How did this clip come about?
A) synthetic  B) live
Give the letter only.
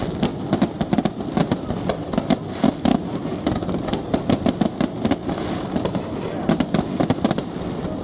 B